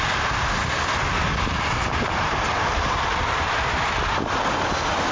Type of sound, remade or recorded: recorded